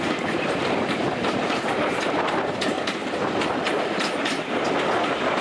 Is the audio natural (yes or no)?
yes